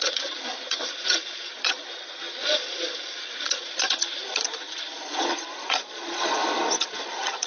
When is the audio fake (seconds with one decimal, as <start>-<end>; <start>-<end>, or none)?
0.0-6.4; 7.0-7.5